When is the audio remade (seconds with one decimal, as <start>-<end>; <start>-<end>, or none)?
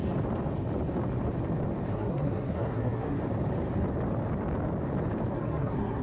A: 1.9-3.2; 5.3-6.0